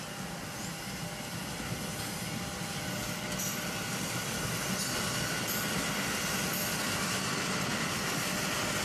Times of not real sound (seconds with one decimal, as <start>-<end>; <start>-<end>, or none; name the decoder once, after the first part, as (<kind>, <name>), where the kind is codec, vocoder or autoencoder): 3.0-5.0 (vocoder, BigVGAN v2); 7.7-8.8